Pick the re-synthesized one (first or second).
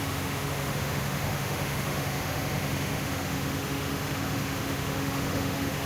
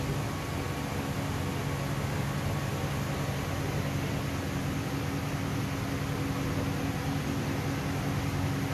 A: first